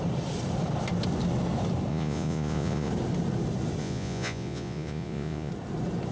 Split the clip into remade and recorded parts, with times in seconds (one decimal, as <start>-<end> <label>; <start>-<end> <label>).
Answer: 0.0-1.9 recorded; 1.9-2.9 remade; 2.9-3.8 recorded; 3.8-5.5 remade; 5.5-6.1 recorded